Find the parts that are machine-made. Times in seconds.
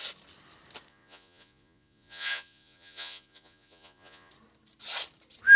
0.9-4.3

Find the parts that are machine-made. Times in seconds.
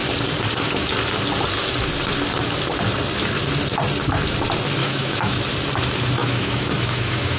4.8-5.4; 6.2-7.4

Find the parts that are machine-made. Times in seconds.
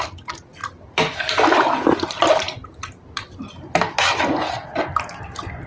0.6-4.0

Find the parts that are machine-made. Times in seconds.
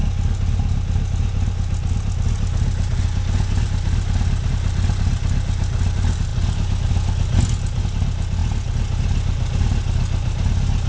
none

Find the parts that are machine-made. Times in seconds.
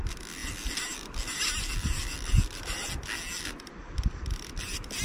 0.4-2.9